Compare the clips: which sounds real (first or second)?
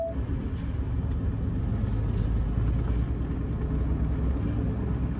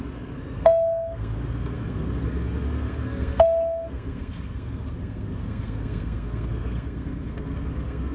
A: first